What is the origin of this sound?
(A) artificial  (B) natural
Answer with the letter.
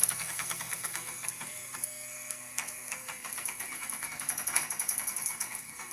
A